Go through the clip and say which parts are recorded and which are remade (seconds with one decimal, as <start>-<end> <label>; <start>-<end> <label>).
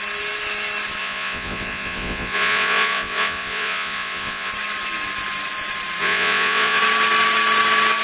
0.0-1.0 recorded; 1.0-4.5 remade; 4.5-6.0 recorded; 6.0-6.8 remade; 6.8-8.0 recorded